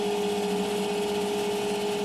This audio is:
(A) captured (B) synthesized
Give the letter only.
A